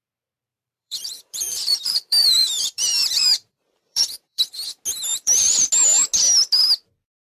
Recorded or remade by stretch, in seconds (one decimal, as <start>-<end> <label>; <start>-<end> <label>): 0.0-0.5 recorded; 0.5-4.4 remade; 4.4-5.1 recorded; 5.1-5.7 remade; 5.7-7.3 recorded